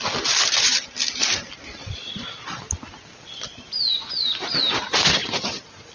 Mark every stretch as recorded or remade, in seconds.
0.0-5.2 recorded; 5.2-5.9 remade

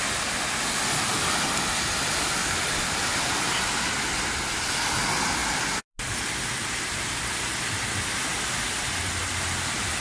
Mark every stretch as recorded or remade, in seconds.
0.0-10.0 recorded

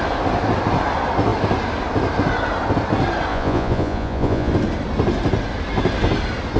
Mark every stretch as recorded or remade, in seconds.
0.0-3.3 recorded; 3.3-4.5 remade; 4.5-6.6 recorded

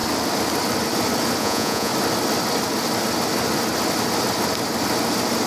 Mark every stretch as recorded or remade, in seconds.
0.0-1.4 recorded; 1.4-1.9 remade; 1.9-5.5 recorded